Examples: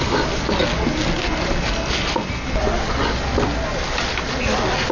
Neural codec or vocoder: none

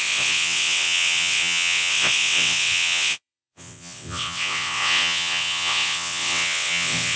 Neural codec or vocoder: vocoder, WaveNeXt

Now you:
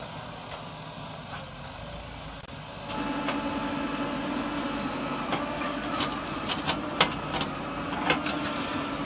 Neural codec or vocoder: none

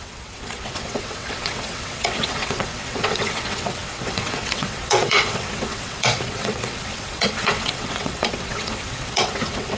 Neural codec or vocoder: vocoder, WaveNeXt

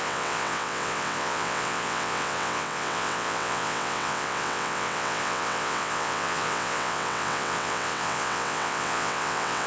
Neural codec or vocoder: vocoder, WaveNeXt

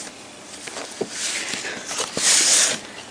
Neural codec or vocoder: none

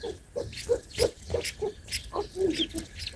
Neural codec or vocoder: none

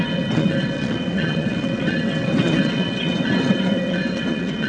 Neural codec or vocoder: vocoder, WaveNeXt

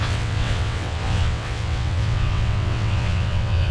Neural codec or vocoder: vocoder, WaveNeXt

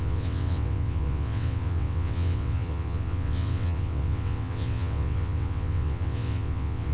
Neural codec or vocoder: vocoder, WaveNeXt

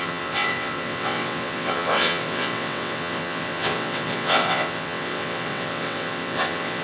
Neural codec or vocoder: vocoder, WaveNeXt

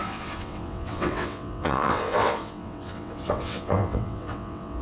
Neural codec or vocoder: vocoder, WaveNeXt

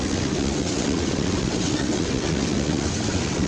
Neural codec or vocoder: vocoder, WaveNeXt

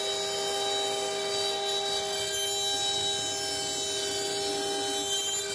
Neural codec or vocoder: none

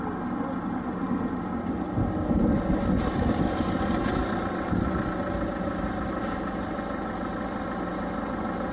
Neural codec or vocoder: none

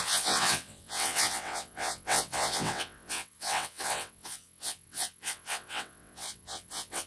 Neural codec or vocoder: vocoder, WaveNeXt